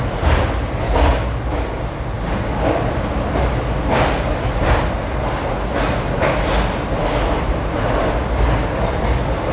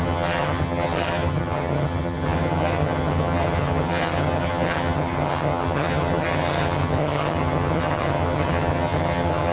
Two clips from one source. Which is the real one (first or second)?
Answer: first